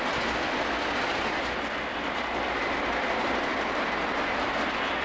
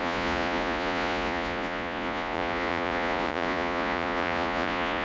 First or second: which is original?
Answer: first